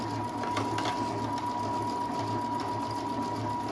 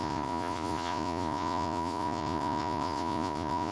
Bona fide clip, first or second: first